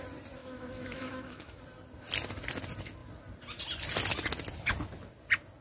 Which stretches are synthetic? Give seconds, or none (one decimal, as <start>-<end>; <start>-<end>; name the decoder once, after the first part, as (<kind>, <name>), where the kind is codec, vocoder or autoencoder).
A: 0.4-1.6 (autoencoder, DAC-VAE)